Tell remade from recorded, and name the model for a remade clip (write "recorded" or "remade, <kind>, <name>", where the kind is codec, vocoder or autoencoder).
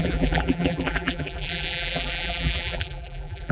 remade, vocoder, BigVGAN v2